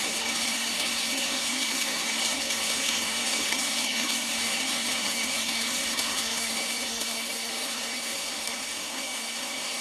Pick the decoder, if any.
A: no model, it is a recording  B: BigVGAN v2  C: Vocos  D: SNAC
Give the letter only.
D